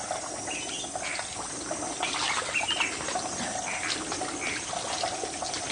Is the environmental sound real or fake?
real